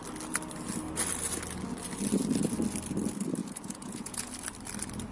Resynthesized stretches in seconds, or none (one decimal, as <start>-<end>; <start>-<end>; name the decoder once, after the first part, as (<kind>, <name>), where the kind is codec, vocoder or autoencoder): 3.4-4.3 (vocoder, Vocos)